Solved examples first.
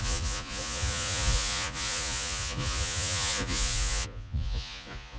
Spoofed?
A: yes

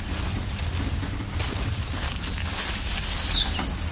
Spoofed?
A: no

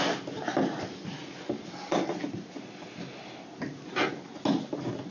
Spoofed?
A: no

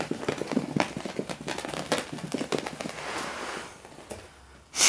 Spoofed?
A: no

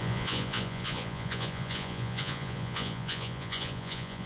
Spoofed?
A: yes